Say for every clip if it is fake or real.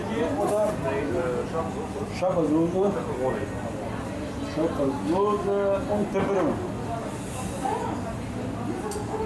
real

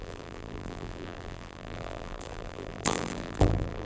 fake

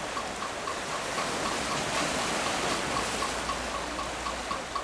real